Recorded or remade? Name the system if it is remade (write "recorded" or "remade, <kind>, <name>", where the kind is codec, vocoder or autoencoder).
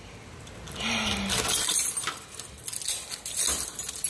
recorded